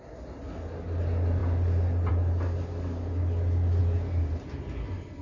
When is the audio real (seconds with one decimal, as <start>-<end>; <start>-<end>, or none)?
0.0-5.2